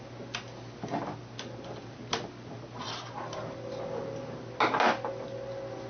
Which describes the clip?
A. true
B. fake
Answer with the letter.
A